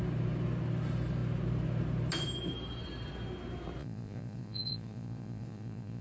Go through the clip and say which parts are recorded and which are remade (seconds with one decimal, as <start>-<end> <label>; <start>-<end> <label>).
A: 0.0-3.8 recorded; 3.8-6.0 remade